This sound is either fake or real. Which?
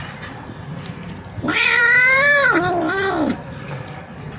fake